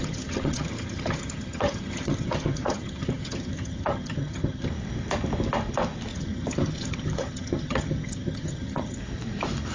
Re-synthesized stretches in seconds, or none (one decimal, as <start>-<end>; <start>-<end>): 0.0-4.7; 6.1-9.0